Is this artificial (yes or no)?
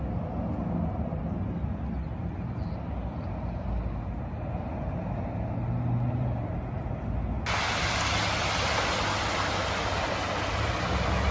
no